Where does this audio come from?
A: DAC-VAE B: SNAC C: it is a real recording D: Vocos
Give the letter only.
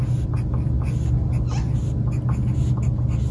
C